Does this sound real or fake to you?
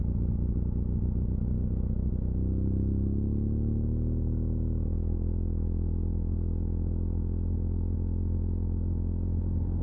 real